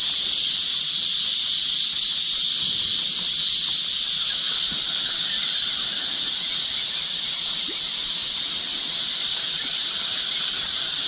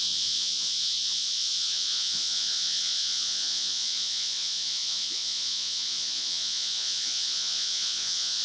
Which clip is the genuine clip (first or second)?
first